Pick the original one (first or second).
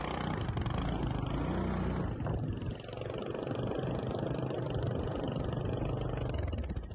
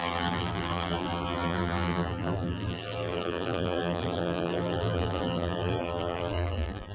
first